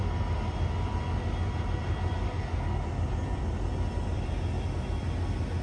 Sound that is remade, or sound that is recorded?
recorded